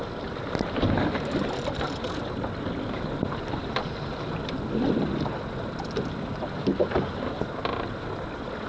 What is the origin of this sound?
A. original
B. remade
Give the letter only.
B